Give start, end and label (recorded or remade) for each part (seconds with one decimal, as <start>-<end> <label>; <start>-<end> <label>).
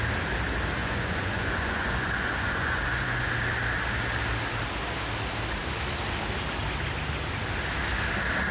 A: 0.0-0.8 recorded; 0.8-3.3 remade; 3.3-8.5 recorded